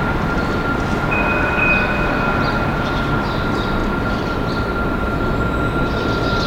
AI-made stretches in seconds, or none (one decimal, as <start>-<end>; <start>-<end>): none